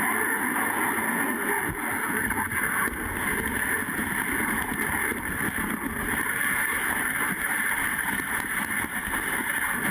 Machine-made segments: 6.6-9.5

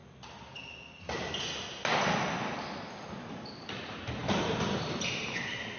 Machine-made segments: 3.5-5.8

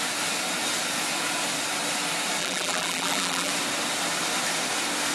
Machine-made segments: 2.4-3.5

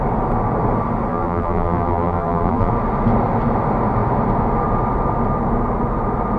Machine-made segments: 1.1-2.7

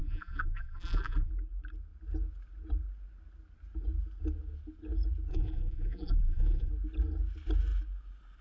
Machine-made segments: 0.0-1.3; 5.3-6.7

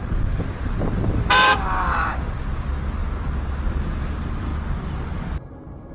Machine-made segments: 0.0-3.0; 3.9-4.5

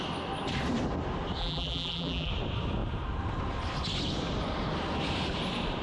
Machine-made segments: 1.4-2.3

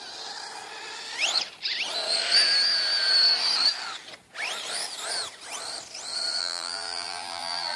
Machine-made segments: 6.4-7.8